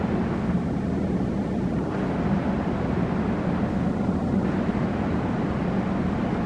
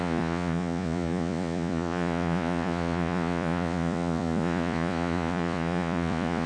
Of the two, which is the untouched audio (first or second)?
first